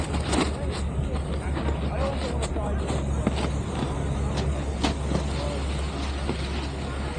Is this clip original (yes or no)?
yes